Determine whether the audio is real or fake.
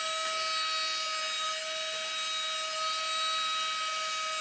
real